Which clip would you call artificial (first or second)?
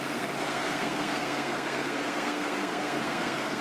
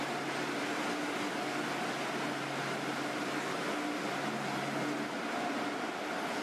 first